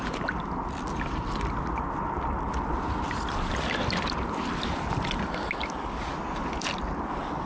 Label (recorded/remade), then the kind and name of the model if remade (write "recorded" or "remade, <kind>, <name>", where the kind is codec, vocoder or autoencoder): recorded